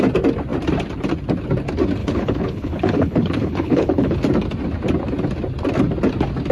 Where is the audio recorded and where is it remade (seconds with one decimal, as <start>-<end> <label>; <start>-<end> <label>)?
0.0-2.0 recorded; 2.0-4.2 remade; 4.2-6.5 recorded